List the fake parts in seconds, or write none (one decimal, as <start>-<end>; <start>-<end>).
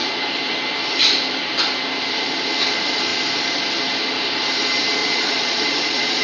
5.0-6.2